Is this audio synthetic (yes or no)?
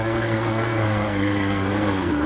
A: yes